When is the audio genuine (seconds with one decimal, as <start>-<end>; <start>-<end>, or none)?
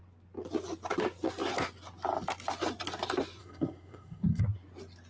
0.0-3.4; 4.4-5.1